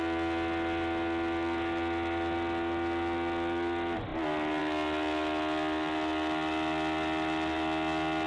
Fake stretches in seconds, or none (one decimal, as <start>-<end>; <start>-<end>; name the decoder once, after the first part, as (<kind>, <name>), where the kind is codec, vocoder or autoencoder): none